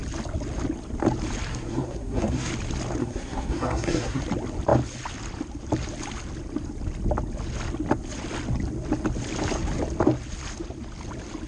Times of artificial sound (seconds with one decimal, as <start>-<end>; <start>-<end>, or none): 1.5-2.5; 3.0-4.2